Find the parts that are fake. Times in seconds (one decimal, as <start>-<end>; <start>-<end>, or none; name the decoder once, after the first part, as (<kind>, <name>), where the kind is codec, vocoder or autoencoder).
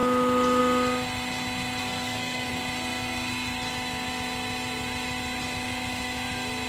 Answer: 1.8-2.5 (codec, SNAC)